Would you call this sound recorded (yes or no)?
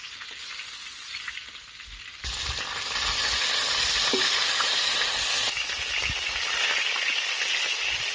yes